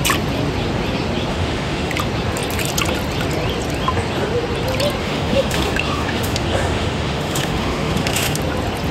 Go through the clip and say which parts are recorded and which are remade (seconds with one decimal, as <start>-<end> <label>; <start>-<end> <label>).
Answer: 0.0-1.3 recorded; 1.3-1.9 remade; 1.9-5.0 recorded; 5.0-8.4 remade; 8.4-8.9 recorded